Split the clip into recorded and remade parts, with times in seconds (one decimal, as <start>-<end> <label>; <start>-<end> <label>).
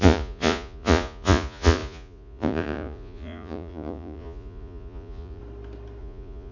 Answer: 0.0-5.4 remade; 5.4-6.0 recorded; 6.0-6.5 remade